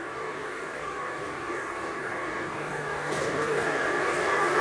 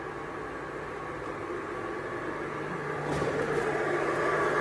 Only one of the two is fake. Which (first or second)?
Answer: first